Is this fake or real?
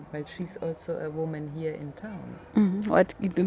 real